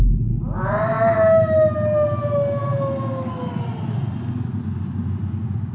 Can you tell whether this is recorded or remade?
recorded